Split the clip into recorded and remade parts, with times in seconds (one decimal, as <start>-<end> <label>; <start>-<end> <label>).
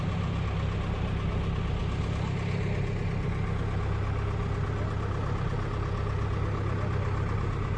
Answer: 0.0-7.8 recorded